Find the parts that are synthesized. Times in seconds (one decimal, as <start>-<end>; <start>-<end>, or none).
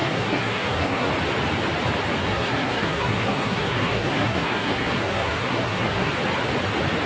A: 0.0-1.1; 2.2-6.1